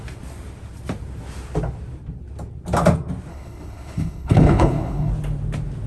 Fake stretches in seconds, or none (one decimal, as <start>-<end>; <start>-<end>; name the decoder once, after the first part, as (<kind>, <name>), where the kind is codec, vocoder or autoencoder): 3.3-5.1 (codec, HILCodec)